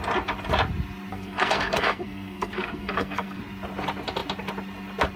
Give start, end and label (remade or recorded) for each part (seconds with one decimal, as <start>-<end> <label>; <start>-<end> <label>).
0.0-1.1 recorded; 1.1-3.4 remade; 3.4-5.2 recorded